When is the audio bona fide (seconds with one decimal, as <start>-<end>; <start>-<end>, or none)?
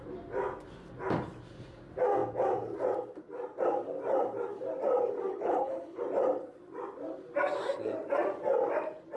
0.0-5.3; 6.0-9.2